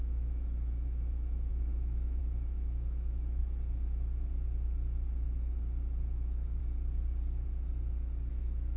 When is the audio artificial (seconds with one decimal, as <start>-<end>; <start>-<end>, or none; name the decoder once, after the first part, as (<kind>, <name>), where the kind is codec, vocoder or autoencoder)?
0.0-3.4 (autoencoder, DAC-VAE); 6.0-6.6; 8.3-8.8